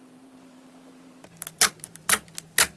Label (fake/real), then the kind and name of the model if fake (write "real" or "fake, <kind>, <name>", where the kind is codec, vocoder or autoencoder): fake, vocoder, BigVGAN v2